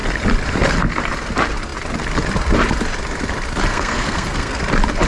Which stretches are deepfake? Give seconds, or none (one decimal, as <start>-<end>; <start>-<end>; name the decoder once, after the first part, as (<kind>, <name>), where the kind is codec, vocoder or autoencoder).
3.7-4.6 (codec, SNAC)